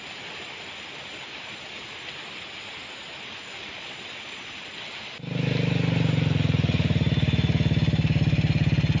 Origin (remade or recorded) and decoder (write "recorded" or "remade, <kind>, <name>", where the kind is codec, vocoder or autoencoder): recorded